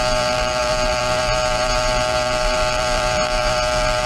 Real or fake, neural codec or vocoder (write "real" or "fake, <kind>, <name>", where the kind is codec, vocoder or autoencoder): fake, vocoder, BigVGAN v2